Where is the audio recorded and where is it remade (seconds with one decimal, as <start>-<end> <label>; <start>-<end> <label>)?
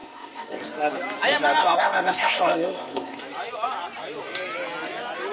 0.0-0.6 remade; 0.6-1.6 recorded; 1.6-3.2 remade; 3.2-5.3 recorded